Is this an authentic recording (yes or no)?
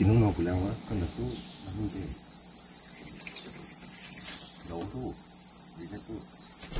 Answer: yes